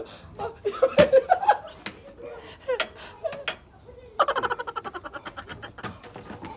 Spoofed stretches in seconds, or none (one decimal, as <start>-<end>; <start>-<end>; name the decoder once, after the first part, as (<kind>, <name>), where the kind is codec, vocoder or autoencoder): none